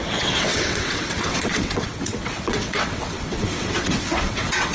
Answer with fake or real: fake